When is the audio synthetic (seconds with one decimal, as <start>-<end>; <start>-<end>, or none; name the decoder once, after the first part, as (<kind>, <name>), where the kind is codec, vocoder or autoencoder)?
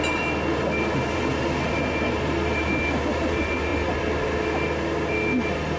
none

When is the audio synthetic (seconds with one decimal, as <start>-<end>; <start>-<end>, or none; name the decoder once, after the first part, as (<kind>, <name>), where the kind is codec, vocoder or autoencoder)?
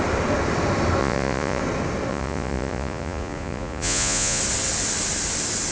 1.0-1.6 (vocoder, Vocos); 2.1-4.4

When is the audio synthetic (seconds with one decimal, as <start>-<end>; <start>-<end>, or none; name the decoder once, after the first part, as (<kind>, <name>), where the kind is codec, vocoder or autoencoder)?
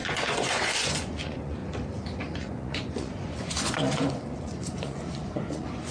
0.0-1.6 (vocoder, Vocos); 2.2-5.9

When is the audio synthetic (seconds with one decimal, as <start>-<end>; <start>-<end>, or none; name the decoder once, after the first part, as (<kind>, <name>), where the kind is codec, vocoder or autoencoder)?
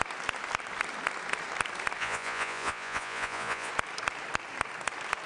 2.0-3.7 (vocoder, Vocos)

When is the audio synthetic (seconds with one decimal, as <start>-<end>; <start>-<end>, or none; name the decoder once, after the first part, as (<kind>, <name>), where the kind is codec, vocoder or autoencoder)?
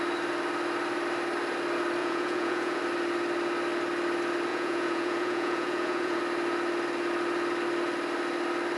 2.0-2.8 (vocoder, Vocos); 4.5-6.2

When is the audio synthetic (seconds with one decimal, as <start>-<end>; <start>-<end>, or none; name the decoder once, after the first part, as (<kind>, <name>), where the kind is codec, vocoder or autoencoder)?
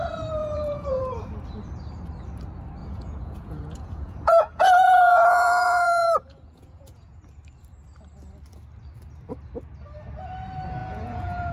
0.4-1.0 (vocoder, Vocos); 2.8-7.2; 10.8-11.5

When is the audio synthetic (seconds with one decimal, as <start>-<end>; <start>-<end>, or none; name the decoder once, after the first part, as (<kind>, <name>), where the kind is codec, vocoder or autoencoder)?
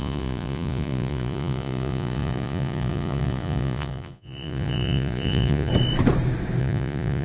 0.0-5.7 (vocoder, Vocos); 6.6-7.2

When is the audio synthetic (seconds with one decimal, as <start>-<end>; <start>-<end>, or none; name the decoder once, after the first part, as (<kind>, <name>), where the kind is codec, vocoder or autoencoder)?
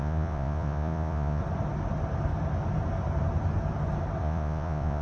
0.0-1.4 (vocoder, Vocos); 4.2-5.0